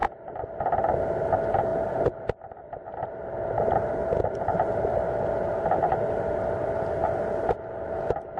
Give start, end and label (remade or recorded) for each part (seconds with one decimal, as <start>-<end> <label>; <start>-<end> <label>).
0.0-8.4 recorded